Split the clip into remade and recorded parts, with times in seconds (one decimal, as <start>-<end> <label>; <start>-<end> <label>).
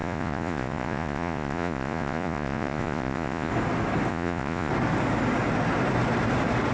0.0-3.5 remade; 3.5-4.1 recorded; 4.1-4.7 remade; 4.7-6.7 recorded